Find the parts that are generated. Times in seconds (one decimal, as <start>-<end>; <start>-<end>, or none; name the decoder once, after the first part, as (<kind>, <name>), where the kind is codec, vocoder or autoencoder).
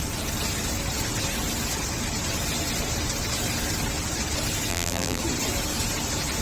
4.7-5.2 (vocoder, BigVGAN v2)